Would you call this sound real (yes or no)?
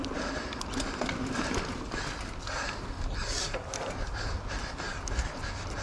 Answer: yes